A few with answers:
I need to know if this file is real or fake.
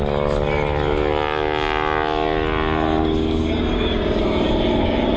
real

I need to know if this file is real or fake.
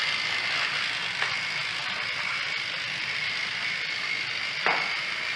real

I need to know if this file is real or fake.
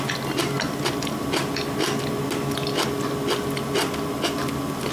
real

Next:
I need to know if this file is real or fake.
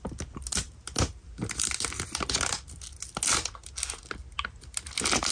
real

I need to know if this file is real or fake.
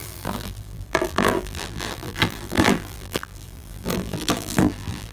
fake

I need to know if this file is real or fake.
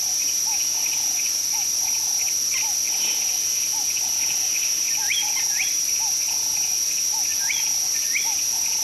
real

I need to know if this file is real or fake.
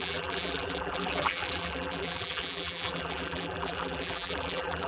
fake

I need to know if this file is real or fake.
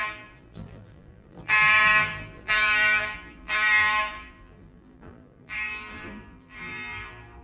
fake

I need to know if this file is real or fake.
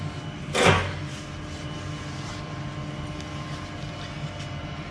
real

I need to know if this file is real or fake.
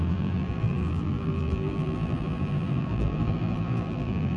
fake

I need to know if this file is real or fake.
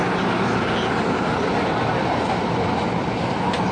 real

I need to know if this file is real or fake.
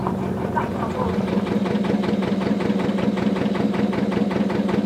real